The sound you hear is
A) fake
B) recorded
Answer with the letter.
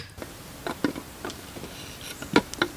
B